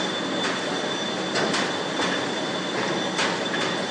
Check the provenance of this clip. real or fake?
real